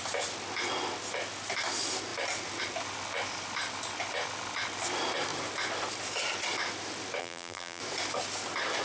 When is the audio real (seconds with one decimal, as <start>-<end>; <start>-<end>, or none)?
0.0-7.2; 7.8-8.8